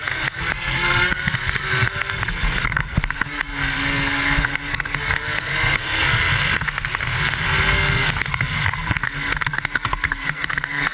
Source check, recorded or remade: remade